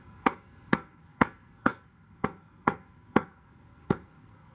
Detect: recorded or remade remade